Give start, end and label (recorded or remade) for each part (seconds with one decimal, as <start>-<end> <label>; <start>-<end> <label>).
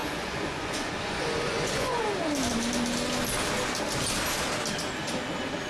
0.0-2.0 remade; 2.0-5.7 recorded